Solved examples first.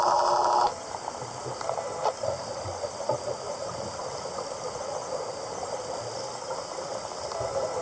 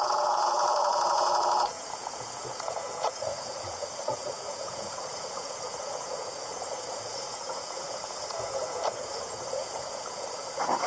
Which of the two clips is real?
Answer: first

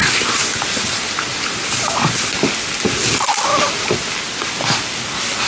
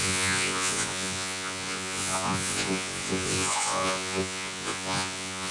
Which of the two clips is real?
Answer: first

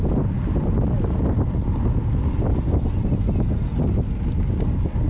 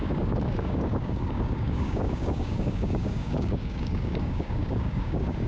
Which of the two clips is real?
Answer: first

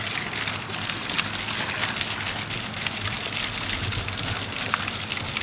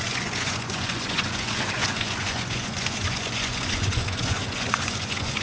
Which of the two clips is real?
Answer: first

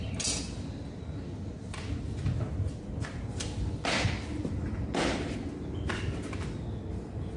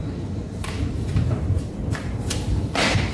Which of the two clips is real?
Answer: first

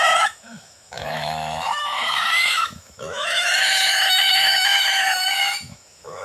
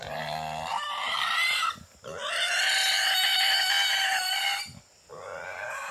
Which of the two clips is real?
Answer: second